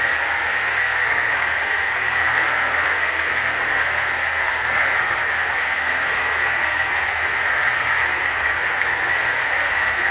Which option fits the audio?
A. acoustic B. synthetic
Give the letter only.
B